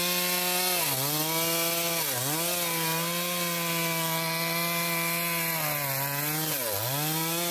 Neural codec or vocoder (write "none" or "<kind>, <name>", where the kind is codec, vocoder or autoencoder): none